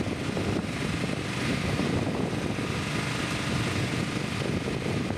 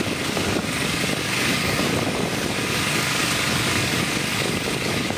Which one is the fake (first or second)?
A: second